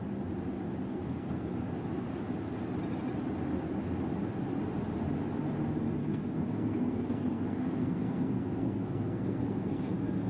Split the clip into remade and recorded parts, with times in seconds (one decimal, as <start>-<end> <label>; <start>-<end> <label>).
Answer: 0.0-0.9 recorded; 0.9-1.5 remade; 1.5-6.0 recorded; 6.0-10.3 remade